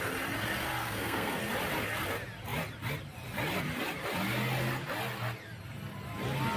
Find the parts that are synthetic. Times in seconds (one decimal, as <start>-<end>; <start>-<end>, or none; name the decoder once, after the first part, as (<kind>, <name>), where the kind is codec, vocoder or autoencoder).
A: 0.8-1.4 (codec, SNAC)